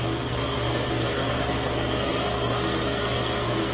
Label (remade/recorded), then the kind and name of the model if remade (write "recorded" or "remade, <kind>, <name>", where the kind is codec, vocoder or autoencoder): remade, codec, SNAC